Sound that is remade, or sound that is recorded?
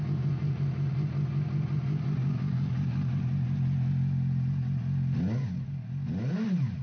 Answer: recorded